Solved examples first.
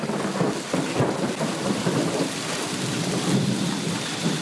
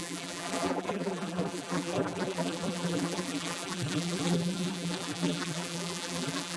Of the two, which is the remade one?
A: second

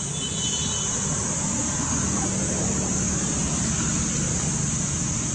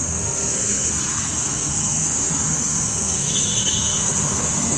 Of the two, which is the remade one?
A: second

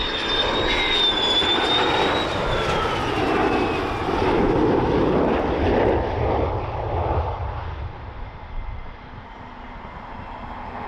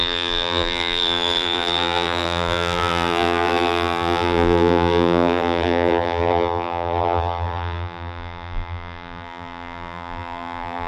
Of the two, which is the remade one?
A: second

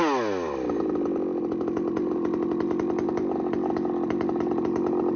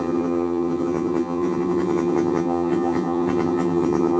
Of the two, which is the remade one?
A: second